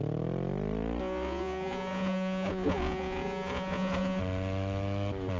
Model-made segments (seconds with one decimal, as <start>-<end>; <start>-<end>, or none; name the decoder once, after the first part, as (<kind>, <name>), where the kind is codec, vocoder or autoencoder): 1.0-4.2 (vocoder, Vocos)